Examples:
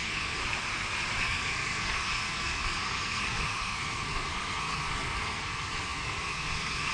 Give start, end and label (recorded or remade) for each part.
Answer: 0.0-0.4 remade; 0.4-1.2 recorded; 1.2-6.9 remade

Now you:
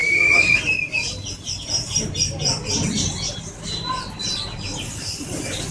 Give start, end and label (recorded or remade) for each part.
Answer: 0.0-5.7 recorded

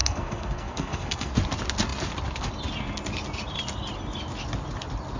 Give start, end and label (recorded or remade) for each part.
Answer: 0.0-1.3 remade; 1.3-5.2 recorded

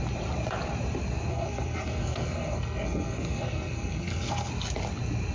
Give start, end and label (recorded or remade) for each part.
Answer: 0.0-1.3 recorded; 1.3-4.5 remade; 4.5-5.3 recorded

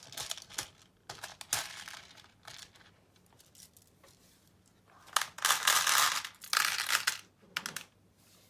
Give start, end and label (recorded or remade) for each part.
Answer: 0.0-8.5 recorded